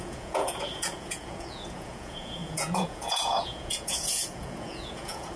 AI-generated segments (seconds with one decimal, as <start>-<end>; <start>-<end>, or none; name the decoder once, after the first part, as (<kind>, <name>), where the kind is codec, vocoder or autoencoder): 0.0-5.4 (vocoder, Vocos)